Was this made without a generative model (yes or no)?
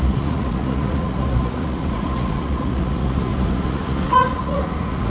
no